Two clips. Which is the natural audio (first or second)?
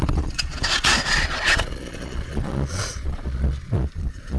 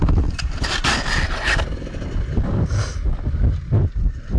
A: second